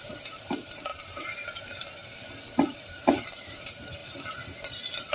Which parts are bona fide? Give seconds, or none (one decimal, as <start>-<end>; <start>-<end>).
2.0-3.6; 4.0-5.1